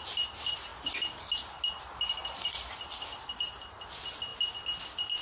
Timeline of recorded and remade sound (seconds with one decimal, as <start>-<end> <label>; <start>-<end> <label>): 0.0-5.2 recorded

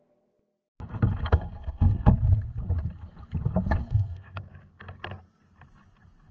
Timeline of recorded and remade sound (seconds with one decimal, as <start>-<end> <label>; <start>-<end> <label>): 0.0-1.3 recorded; 1.3-2.1 remade; 2.1-3.8 recorded; 3.8-4.4 remade; 4.4-6.3 recorded

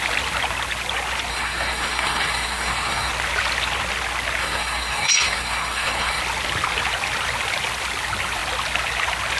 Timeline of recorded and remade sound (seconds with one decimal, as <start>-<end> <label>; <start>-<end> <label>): 0.0-1.3 recorded; 1.3-3.1 remade; 3.1-4.4 recorded; 4.4-6.2 remade; 6.2-9.4 recorded

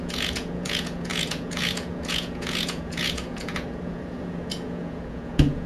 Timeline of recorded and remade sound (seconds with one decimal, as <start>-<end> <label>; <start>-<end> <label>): 0.0-5.7 remade